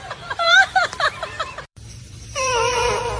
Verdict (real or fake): fake